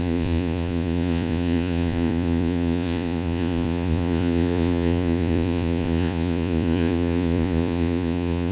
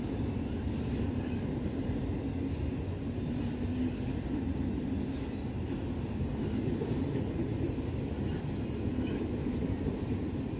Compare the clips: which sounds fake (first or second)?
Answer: first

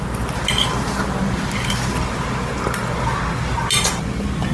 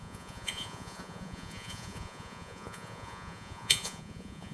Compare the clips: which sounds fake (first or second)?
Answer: second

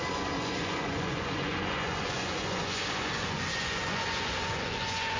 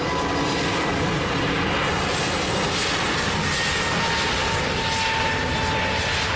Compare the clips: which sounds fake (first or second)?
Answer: first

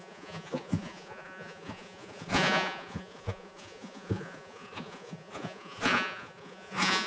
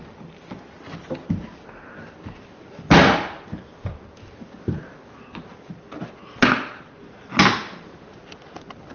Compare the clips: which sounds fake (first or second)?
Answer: first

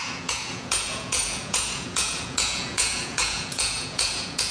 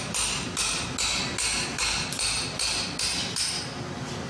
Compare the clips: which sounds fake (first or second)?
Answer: first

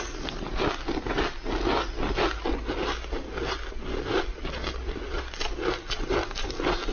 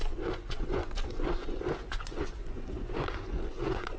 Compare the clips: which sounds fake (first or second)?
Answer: second